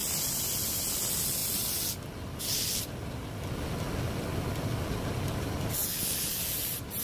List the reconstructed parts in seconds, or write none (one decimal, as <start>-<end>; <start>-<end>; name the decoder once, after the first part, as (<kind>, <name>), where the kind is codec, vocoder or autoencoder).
none